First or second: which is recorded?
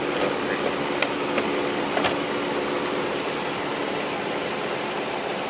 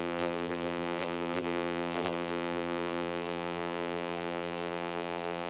first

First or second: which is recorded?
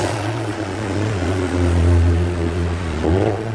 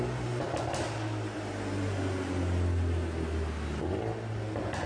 second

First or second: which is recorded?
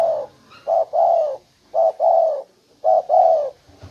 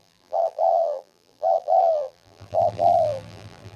first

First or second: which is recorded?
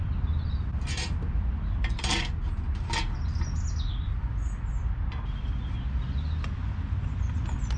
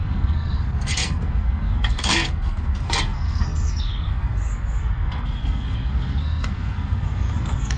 first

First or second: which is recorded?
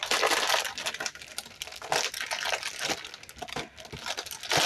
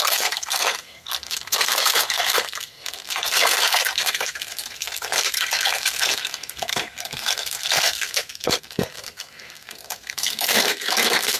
first